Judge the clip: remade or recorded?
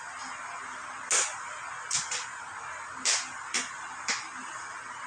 recorded